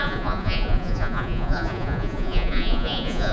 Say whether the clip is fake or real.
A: fake